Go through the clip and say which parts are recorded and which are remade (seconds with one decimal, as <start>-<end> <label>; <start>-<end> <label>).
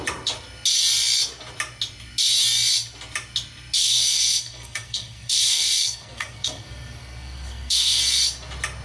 0.0-3.8 recorded; 3.8-8.0 remade; 8.0-8.8 recorded